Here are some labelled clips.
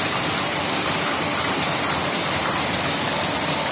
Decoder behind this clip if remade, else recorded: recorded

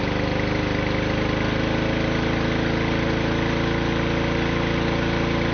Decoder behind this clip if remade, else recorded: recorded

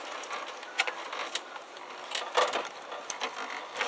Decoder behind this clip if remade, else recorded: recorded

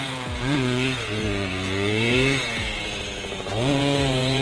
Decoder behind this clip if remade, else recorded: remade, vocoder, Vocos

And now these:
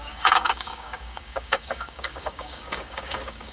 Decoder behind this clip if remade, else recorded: remade, codec, DAC